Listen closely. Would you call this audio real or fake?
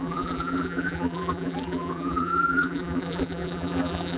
fake